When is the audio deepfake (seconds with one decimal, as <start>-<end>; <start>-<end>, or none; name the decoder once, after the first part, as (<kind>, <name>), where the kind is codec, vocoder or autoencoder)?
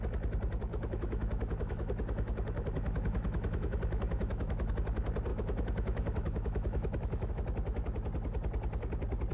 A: 0.7-4.7 (autoencoder, DAC-VAE); 5.3-7.3